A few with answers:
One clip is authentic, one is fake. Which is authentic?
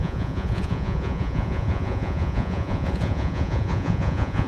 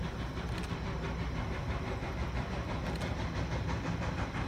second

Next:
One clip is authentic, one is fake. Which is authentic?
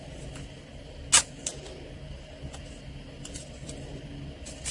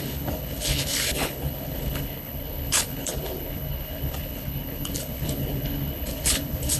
first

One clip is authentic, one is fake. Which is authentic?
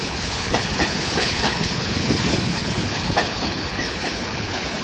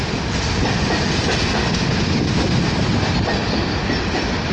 second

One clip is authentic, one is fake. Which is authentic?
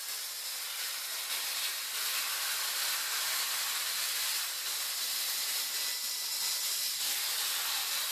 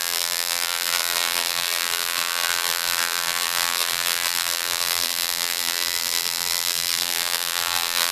first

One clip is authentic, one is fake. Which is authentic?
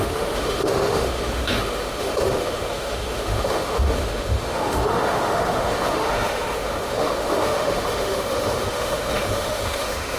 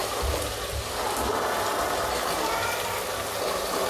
second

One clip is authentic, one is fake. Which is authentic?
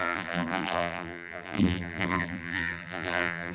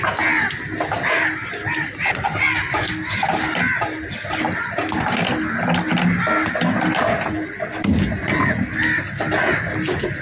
second